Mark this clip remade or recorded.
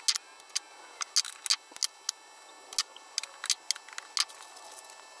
recorded